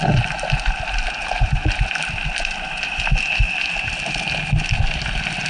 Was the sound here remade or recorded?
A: recorded